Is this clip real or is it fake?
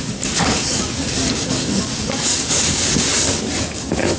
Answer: fake